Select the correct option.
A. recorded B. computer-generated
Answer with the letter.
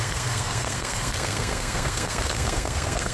B